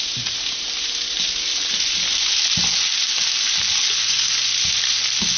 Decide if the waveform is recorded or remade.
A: recorded